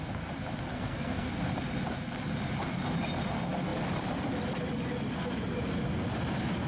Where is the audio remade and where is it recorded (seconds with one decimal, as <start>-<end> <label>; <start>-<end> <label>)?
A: 0.0-0.7 recorded; 0.7-1.3 remade; 1.3-6.7 recorded